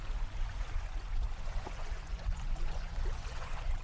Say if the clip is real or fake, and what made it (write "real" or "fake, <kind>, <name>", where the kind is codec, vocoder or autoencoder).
fake, vocoder, Vocos